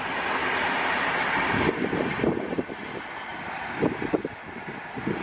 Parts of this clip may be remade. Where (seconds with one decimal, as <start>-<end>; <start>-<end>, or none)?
0.4-2.7